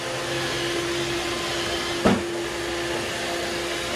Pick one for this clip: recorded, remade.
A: recorded